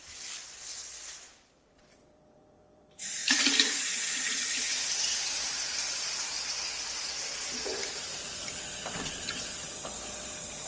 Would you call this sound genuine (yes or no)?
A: no